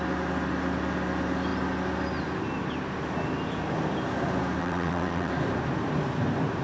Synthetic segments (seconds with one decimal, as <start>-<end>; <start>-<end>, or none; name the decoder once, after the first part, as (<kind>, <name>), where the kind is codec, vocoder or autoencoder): 4.6-5.3 (vocoder, WaveNeXt)